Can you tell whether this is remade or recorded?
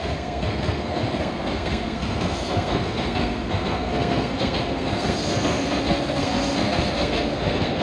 remade